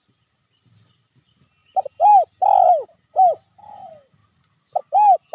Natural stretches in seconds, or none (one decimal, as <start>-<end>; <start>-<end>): 0.0-1.6; 2.1-5.3